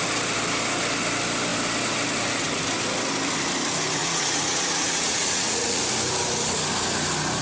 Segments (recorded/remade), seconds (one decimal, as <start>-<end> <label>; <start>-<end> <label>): 0.0-4.0 recorded; 4.0-5.8 remade; 5.8-7.4 recorded